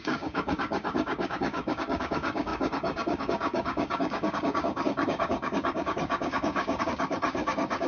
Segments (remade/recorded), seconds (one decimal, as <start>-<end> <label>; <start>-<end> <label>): 0.0-7.9 remade